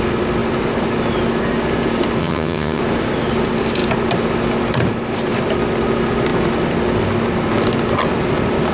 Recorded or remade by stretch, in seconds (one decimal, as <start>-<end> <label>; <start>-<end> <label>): 0.0-2.2 recorded; 2.2-2.8 remade; 2.8-8.7 recorded